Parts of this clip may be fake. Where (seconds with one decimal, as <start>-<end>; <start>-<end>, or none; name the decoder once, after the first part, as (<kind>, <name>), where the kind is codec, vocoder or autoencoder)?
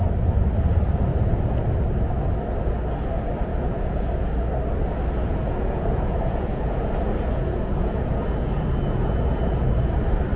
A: 1.1-1.8 (vocoder, Vocos); 3.5-4.3; 5.2-9.7